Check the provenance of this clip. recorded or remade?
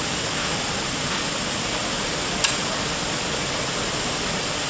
recorded